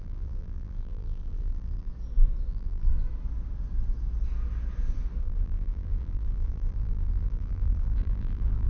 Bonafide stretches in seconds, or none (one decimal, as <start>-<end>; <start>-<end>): 1.9-2.5; 2.9-5.2